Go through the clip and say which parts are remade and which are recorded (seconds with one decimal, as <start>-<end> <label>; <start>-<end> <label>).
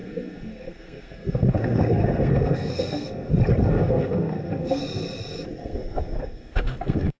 0.0-3.3 remade; 3.3-3.7 recorded; 3.7-4.8 remade; 4.8-5.6 recorded; 5.6-7.2 remade